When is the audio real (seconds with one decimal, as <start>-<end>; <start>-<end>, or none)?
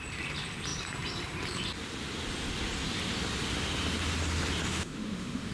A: 0.0-4.7